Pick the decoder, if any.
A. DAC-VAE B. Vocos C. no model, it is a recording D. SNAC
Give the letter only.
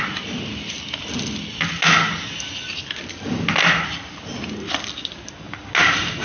C